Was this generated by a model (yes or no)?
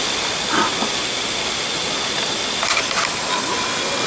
no